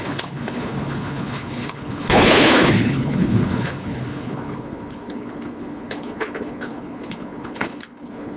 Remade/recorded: remade